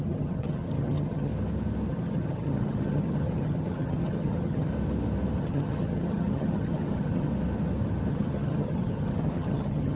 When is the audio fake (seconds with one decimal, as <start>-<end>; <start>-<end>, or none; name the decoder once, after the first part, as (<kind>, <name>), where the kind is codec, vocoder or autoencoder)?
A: 0.0-1.3 (vocoder, HiFi-GAN); 1.9-4.7; 5.4-7.3; 8.1-10.0